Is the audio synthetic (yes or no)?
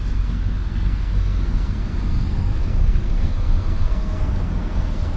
yes